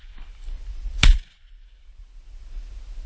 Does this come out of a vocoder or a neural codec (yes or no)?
no